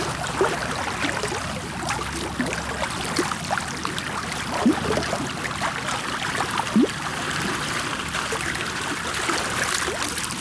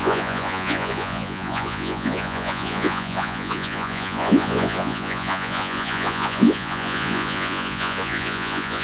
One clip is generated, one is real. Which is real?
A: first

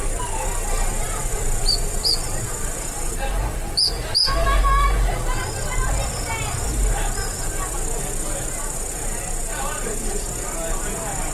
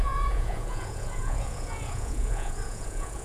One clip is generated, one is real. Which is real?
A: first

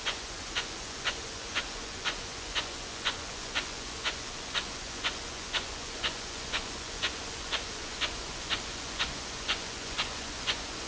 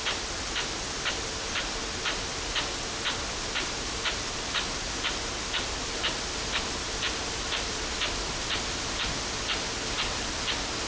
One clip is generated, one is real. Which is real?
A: second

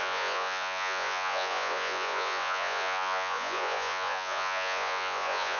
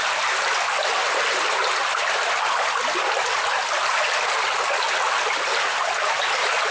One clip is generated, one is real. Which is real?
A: second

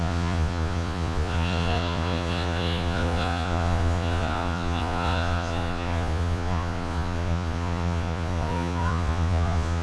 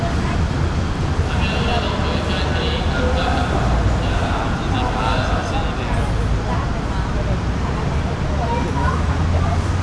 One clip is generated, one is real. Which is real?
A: second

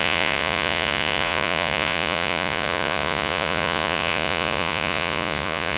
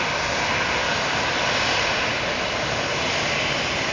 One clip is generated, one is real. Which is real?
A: second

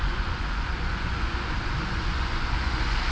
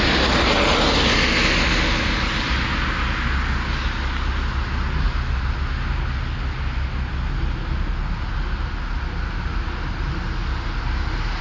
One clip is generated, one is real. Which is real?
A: second